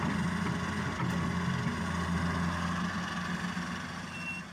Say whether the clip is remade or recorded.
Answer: recorded